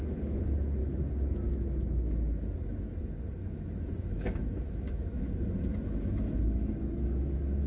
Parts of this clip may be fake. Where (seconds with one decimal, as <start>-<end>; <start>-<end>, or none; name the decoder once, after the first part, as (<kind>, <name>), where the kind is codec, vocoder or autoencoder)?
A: 0.0-7.7 (autoencoder, DAC-VAE)